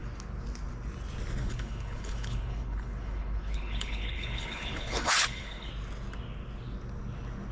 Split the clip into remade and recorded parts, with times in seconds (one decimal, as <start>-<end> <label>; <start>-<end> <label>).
0.0-1.4 recorded; 1.4-5.7 remade; 5.7-7.5 recorded